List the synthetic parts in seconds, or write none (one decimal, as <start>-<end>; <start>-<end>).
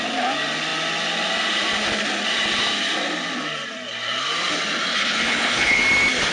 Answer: 4.9-5.8